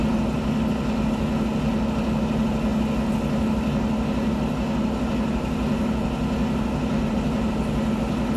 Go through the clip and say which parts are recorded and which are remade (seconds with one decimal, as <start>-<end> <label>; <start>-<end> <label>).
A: 0.0-8.4 recorded